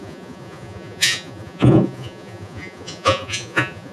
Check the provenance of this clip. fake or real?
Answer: fake